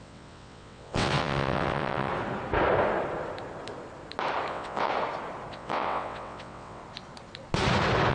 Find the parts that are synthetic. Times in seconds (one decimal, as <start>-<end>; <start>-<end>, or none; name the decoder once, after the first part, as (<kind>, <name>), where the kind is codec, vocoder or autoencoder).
0.0-2.1 (vocoder, WaveNeXt); 4.5-4.9; 5.5-6.8